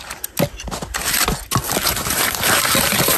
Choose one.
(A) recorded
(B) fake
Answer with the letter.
A